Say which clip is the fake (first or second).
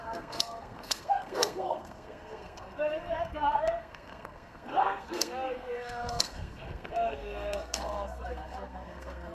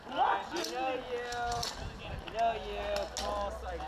first